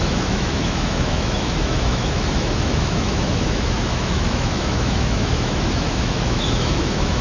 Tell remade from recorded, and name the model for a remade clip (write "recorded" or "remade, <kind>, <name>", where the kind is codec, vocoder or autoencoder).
remade, autoencoder, DAC-VAE